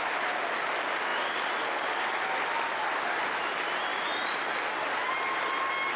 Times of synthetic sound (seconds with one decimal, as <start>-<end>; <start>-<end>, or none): none